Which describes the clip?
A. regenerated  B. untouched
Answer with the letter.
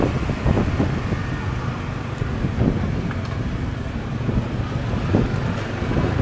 B